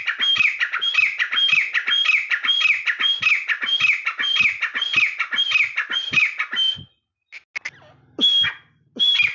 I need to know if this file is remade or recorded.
recorded